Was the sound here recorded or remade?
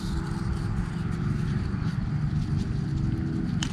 recorded